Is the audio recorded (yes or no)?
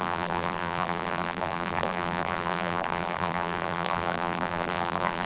no